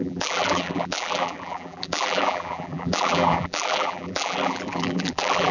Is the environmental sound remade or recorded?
remade